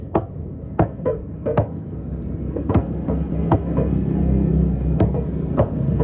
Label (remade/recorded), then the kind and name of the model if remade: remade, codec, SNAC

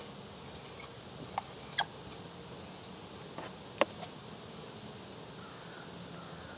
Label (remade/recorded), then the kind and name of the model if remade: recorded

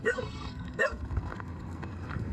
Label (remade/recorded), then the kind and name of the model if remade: remade, codec, SNAC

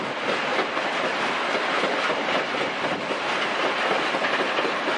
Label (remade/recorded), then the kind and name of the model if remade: recorded